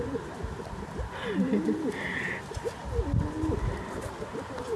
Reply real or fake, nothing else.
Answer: real